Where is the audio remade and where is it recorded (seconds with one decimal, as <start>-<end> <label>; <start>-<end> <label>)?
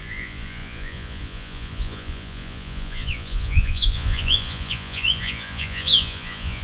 0.0-6.6 remade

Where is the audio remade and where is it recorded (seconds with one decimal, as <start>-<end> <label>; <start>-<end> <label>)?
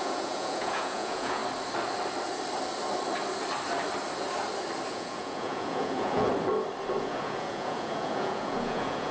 0.0-1.4 remade; 1.4-4.9 recorded; 4.9-6.3 remade; 6.3-7.0 recorded; 7.0-9.1 remade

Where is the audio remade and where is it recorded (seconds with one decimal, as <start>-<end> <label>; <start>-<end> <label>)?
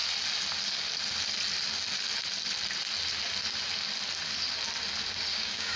0.0-5.3 recorded; 5.3-5.8 remade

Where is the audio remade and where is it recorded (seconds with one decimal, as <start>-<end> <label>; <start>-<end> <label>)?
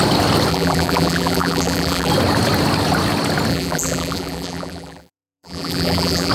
0.0-0.5 recorded; 0.5-2.1 remade; 2.1-3.5 recorded; 3.5-6.3 remade